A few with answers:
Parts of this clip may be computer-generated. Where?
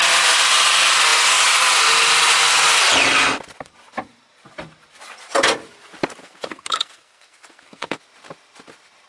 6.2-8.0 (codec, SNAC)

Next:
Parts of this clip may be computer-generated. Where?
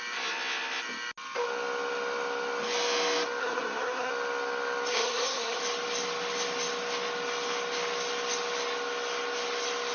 3.4-4.1 (codec, SNAC); 4.9-5.6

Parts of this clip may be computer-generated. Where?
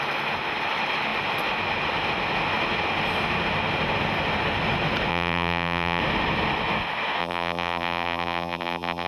5.1-6.0 (vocoder, BigVGAN v2); 7.2-9.1